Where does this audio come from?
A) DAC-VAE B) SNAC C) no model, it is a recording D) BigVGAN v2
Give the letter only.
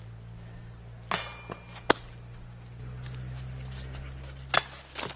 C